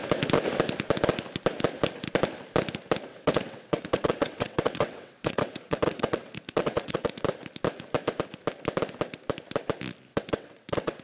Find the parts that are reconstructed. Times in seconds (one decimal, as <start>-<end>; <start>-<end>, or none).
3.1-7.2; 10.1-11.0